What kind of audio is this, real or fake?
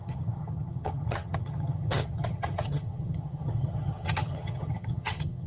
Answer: fake